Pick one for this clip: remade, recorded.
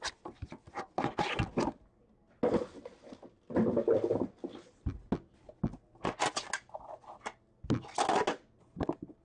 recorded